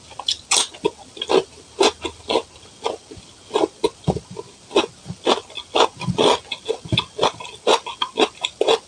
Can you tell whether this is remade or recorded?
recorded